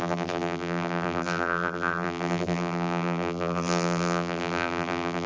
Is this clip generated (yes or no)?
yes